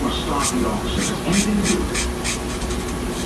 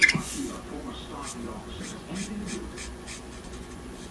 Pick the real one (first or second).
first